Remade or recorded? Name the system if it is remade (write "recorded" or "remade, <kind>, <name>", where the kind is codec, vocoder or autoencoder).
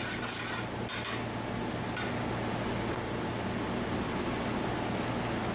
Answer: recorded